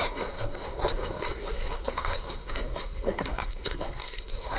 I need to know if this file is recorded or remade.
remade